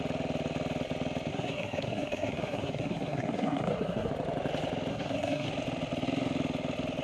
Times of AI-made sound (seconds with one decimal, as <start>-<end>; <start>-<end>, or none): 1.3-4.1; 4.9-5.5